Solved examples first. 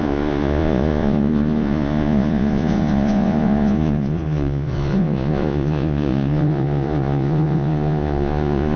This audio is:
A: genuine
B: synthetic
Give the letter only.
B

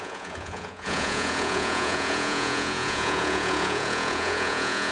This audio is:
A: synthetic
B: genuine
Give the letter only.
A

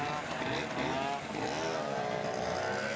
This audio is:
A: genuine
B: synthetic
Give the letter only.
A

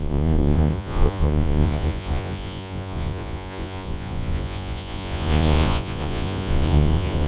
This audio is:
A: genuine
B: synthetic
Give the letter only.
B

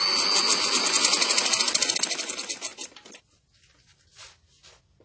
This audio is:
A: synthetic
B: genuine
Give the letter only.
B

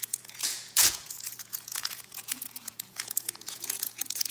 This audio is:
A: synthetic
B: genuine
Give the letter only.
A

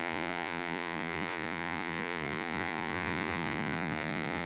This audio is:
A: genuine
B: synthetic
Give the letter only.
B